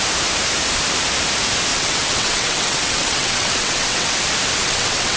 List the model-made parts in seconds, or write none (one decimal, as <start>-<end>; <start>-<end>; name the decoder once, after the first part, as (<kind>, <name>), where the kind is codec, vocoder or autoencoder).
1.7-4.1 (vocoder, WaveNeXt); 4.6-5.2